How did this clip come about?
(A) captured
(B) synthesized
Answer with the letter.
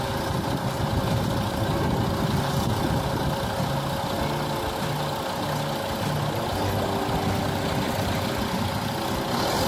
A